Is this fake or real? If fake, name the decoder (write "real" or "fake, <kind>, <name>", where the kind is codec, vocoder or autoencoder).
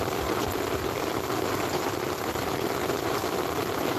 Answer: fake, vocoder, BigVGAN v2